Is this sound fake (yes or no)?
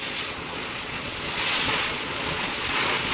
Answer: yes